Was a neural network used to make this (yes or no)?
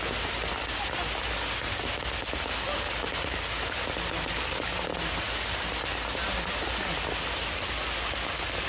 no